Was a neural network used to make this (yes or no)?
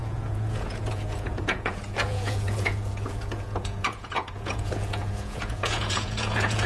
yes